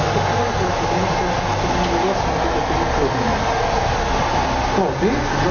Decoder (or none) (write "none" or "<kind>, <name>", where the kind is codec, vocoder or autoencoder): none